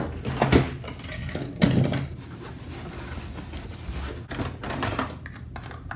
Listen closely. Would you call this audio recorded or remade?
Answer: recorded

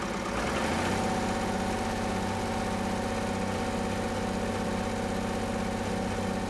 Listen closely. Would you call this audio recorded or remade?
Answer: recorded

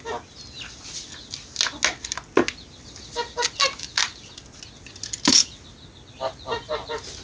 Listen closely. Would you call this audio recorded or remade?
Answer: recorded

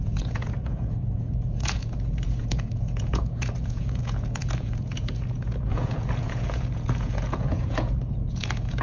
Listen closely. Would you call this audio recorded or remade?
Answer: remade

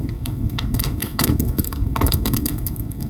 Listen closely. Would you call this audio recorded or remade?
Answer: remade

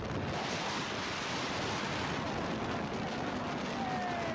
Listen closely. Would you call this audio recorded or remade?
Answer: recorded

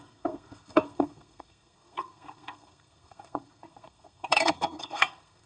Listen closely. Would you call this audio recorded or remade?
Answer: remade